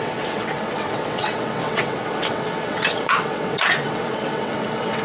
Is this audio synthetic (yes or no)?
yes